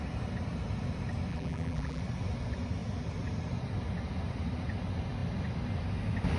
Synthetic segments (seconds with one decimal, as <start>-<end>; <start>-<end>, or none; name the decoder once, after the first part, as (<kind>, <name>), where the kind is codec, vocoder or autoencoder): 1.3-2.0 (vocoder, BigVGAN v2)

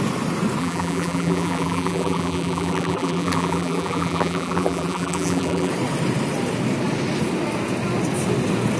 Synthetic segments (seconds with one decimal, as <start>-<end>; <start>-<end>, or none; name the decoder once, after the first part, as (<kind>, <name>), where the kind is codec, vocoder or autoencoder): 0.6-5.7 (vocoder, BigVGAN v2)

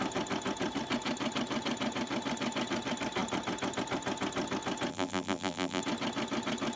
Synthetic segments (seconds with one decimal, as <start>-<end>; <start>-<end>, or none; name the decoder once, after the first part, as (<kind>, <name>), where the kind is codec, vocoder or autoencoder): 4.9-5.8 (vocoder, BigVGAN v2)

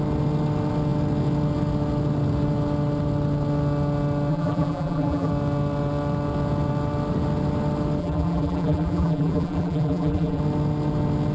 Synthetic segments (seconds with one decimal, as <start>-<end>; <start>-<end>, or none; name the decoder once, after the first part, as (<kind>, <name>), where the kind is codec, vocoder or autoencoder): 4.3-5.3 (vocoder, BigVGAN v2); 8.0-10.4